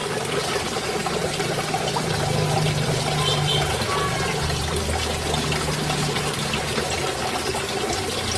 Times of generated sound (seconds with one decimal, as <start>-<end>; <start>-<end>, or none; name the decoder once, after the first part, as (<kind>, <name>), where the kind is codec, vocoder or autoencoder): none

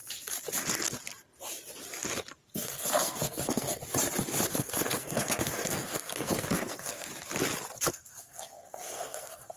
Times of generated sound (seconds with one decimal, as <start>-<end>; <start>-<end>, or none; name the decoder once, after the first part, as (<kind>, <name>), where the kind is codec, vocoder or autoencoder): 2.5-3.8 (codec, SNAC); 4.5-7.1; 7.9-9.6